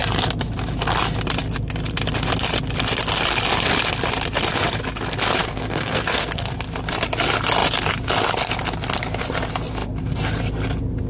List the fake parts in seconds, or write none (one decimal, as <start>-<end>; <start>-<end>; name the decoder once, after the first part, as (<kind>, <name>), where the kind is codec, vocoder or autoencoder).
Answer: 5.4-6.5 (codec, SNAC)

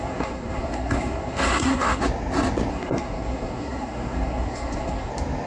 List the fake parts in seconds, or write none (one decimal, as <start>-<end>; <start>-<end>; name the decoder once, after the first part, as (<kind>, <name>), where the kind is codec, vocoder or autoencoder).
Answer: 0.0-2.0 (codec, SNAC); 2.7-5.1